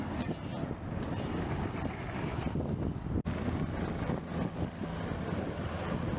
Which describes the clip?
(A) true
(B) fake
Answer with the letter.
A